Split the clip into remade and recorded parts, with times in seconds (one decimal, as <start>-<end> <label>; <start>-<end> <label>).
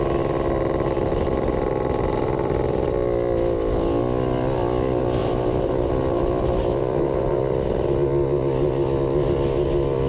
0.0-5.2 recorded; 5.2-5.9 remade; 5.9-6.7 recorded; 6.7-7.4 remade; 7.4-10.1 recorded